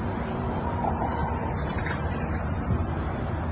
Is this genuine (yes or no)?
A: no